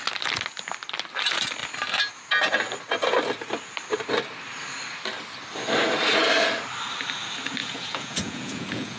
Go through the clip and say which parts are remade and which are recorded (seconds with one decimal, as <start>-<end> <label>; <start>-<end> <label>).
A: 0.0-7.6 recorded; 7.6-9.0 remade